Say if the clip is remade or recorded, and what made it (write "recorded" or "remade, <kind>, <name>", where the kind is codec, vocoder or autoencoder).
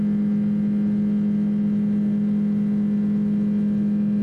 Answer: recorded